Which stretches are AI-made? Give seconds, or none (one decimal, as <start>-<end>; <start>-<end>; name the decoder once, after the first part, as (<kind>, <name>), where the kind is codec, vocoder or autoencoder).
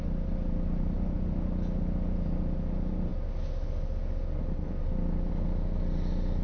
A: none